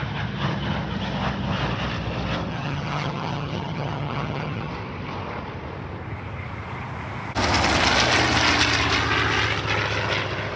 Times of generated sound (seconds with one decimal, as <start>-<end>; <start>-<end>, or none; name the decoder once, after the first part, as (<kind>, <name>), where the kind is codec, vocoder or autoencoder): 2.5-4.7 (vocoder, HiFi-GAN)